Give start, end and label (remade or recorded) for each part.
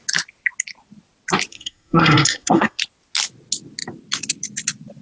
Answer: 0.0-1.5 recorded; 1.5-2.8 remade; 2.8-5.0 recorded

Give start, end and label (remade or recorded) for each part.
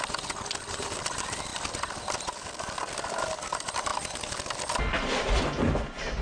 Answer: 0.0-6.2 recorded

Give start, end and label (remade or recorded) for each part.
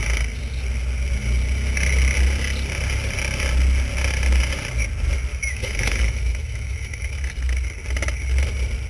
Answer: 0.0-5.3 recorded; 5.3-7.1 remade; 7.1-8.9 recorded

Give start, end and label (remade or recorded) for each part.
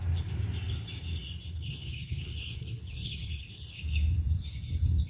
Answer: 0.0-1.5 recorded; 1.5-3.8 remade; 3.8-5.1 recorded